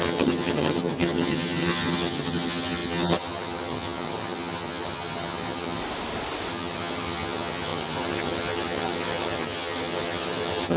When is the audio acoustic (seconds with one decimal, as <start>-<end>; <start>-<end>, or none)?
5.8-6.5